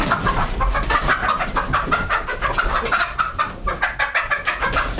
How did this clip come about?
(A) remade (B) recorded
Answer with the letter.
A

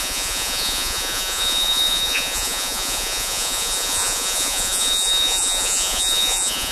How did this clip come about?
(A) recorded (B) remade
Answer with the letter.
B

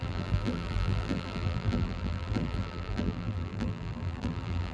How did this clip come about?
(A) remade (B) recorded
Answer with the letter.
A